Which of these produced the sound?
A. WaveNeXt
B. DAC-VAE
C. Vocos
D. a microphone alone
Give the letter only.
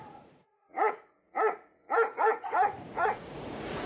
C